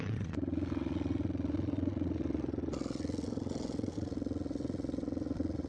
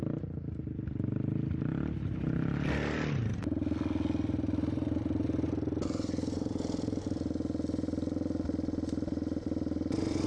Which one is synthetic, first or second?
first